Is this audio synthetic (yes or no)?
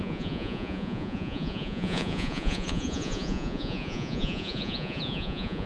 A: yes